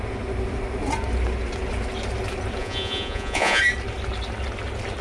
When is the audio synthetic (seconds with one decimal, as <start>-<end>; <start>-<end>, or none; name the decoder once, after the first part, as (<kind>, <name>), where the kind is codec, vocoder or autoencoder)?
2.6-3.6 (vocoder, Vocos)